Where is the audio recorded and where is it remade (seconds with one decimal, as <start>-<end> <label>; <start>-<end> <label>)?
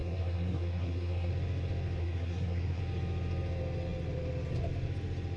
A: 0.0-1.3 remade; 1.3-2.0 recorded; 2.0-2.8 remade; 2.8-5.4 recorded